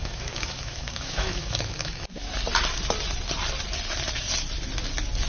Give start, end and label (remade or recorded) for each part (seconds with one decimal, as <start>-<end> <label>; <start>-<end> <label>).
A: 0.0-2.3 remade; 2.3-5.3 recorded